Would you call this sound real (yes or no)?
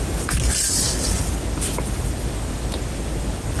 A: yes